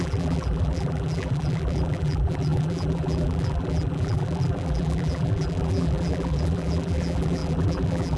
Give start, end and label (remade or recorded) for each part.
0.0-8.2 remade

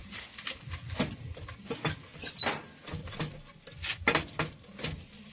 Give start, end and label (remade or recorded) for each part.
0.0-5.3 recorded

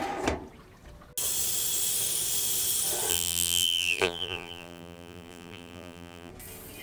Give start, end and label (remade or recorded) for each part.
0.0-3.1 recorded; 3.1-6.3 remade; 6.3-6.8 recorded